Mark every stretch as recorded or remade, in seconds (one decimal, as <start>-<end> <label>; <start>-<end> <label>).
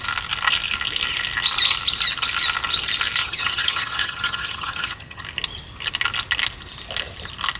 0.0-3.2 recorded; 3.2-5.2 remade; 5.2-7.6 recorded